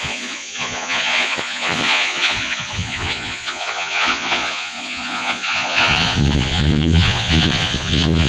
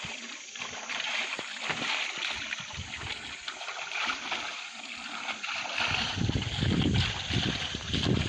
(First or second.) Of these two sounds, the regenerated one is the first